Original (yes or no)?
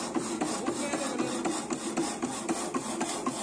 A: yes